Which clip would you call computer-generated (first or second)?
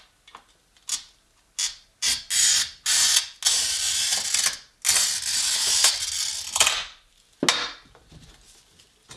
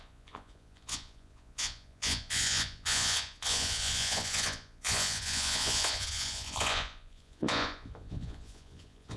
second